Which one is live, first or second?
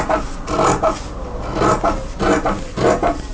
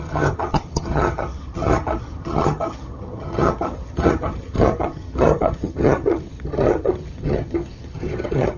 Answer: first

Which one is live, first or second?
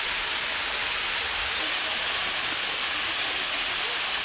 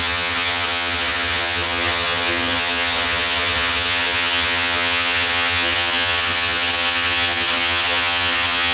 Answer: first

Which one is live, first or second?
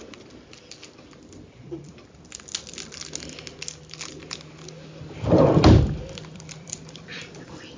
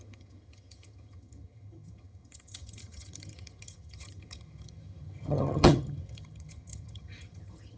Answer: first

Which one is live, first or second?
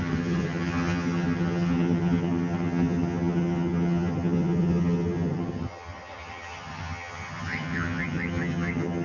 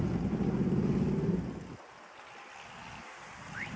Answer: second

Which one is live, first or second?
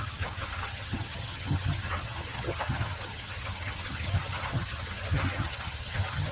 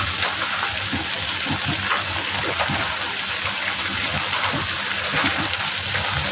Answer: second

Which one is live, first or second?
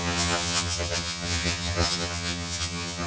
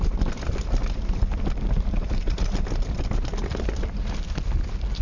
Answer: second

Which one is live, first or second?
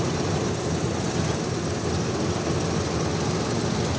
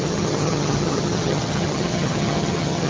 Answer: first